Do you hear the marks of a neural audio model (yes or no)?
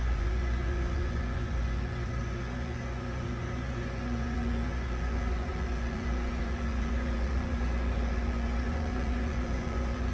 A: yes